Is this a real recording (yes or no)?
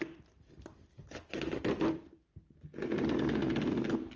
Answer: yes